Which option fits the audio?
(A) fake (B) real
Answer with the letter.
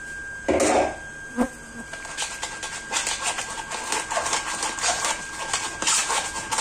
B